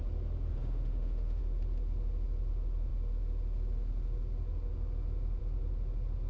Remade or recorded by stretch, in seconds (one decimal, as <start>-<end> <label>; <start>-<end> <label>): 0.0-0.6 recorded; 0.6-1.4 remade; 1.4-6.3 recorded